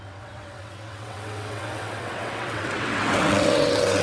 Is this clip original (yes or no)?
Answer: no